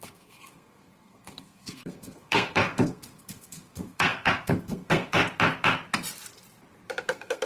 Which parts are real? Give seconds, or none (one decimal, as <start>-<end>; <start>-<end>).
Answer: 5.2-7.0